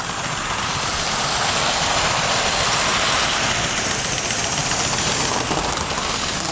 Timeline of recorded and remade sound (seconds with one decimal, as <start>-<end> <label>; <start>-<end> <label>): 0.0-6.5 recorded